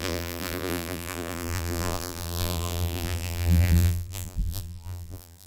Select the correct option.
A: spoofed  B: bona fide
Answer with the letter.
A